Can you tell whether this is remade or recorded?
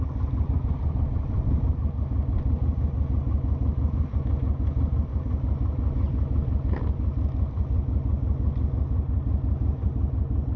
recorded